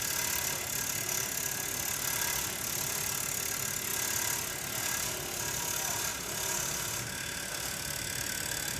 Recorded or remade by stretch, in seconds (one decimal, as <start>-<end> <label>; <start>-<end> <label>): 0.0-8.8 recorded